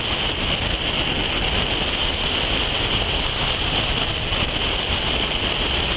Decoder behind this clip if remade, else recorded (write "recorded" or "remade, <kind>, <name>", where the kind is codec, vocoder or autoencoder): recorded